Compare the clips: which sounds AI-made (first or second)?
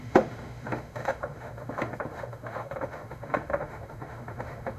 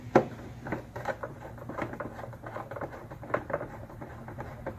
first